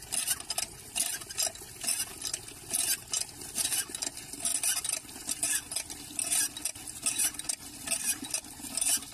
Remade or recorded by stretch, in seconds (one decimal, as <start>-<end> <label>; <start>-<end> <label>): 0.0-9.1 recorded